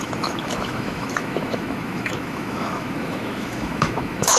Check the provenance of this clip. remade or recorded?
remade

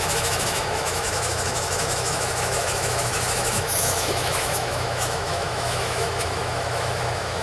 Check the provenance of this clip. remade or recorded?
remade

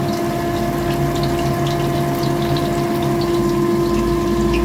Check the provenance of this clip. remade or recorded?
recorded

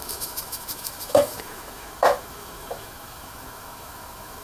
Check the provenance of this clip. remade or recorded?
remade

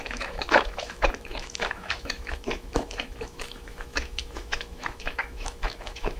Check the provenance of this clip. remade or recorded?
remade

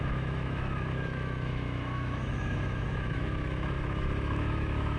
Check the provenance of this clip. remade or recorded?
remade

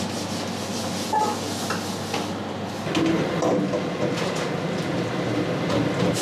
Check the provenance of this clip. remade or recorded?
recorded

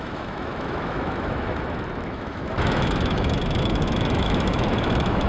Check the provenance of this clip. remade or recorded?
remade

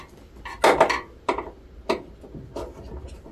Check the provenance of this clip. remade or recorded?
recorded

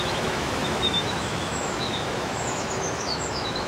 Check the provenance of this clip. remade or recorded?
remade